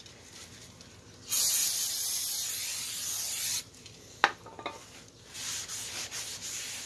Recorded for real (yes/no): yes